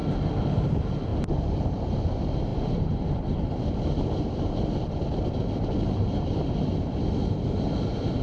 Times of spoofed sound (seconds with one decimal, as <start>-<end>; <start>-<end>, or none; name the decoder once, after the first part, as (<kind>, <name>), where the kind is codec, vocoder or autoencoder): 0.6-8.2 (vocoder, BigVGAN v2)